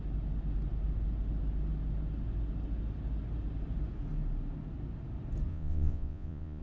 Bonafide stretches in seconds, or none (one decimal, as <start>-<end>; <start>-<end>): 0.0-5.5